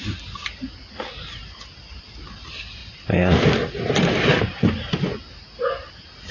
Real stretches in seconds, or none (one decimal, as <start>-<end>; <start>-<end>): 0.0-2.8; 5.0-6.3